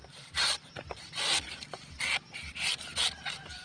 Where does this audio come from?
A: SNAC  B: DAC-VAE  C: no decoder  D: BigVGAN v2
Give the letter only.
C